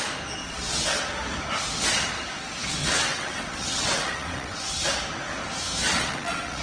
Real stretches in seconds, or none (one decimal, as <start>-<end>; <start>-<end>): 0.0-0.4; 1.0-2.8; 4.8-5.9